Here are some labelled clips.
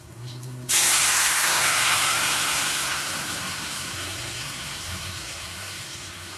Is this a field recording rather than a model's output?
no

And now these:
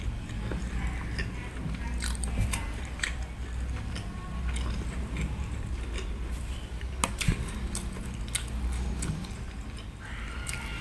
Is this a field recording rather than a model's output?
yes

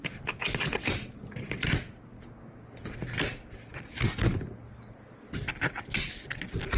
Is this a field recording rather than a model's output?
yes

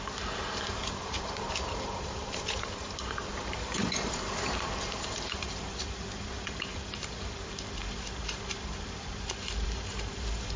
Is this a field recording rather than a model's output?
no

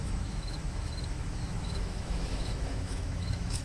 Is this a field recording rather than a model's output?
no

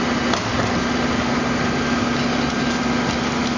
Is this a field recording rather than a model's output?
yes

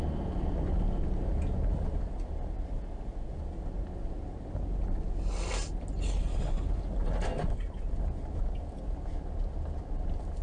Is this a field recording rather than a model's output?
yes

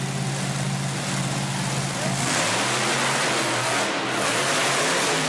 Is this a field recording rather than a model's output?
yes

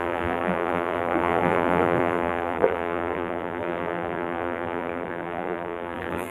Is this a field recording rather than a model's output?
no